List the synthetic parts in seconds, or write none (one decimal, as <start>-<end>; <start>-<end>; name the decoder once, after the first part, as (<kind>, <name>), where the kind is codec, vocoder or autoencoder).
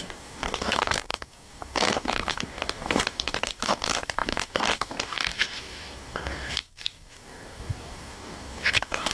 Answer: 0.0-9.1 (codec, DAC)